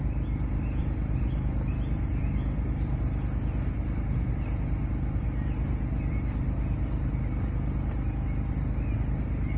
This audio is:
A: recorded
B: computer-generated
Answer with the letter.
A